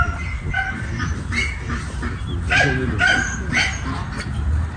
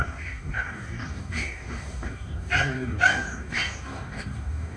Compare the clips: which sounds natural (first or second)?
first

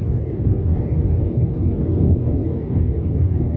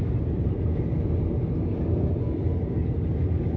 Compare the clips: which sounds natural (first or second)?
second